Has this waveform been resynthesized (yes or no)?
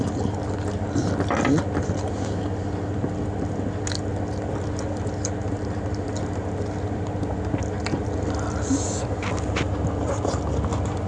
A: no